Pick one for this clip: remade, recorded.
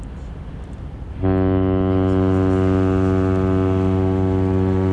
recorded